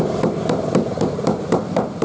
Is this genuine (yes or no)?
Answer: no